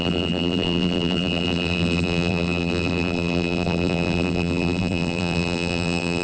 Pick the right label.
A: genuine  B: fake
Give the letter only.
B